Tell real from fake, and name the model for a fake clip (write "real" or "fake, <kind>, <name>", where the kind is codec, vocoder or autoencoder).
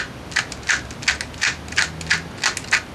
real